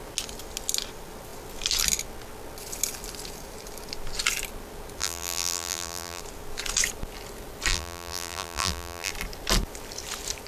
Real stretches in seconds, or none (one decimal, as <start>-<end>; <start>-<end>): 0.0-5.0; 6.2-7.7; 9.1-10.5